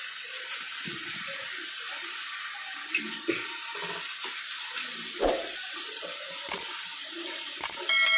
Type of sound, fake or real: real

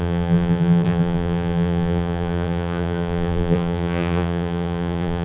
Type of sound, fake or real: fake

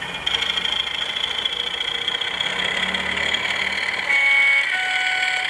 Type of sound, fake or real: real